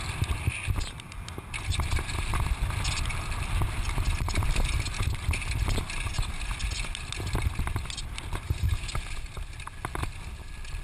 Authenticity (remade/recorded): recorded